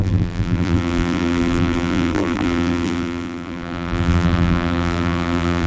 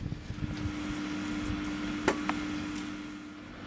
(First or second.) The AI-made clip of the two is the first